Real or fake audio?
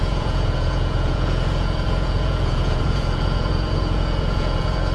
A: fake